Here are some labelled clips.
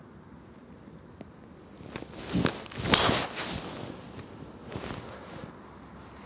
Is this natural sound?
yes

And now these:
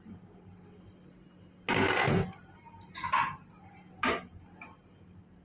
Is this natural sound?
yes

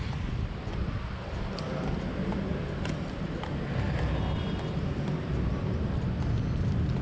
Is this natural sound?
yes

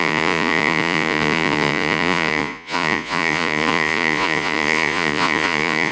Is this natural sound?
no